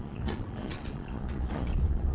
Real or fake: fake